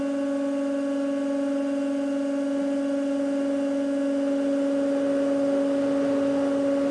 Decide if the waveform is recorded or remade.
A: recorded